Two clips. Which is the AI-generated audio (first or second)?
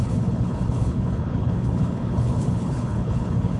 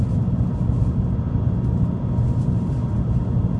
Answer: first